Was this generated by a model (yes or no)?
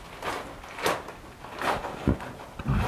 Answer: no